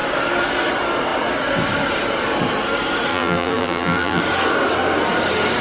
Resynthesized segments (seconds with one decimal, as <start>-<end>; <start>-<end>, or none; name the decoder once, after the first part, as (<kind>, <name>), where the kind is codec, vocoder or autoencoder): 3.1-4.2 (vocoder, BigVGAN v2)